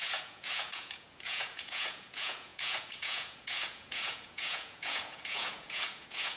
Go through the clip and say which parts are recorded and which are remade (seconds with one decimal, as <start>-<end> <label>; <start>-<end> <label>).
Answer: 0.0-6.4 remade